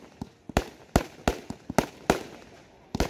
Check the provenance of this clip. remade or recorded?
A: recorded